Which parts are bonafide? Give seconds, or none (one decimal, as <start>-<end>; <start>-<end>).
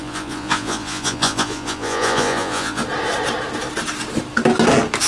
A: 2.8-5.1